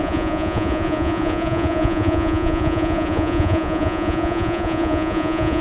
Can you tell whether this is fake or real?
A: fake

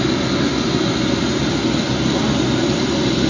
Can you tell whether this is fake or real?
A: real